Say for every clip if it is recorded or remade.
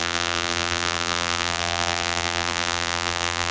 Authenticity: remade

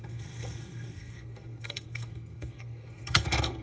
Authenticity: remade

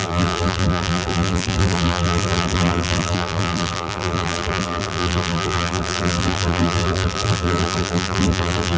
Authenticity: remade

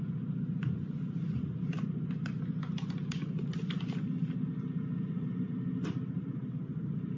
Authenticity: recorded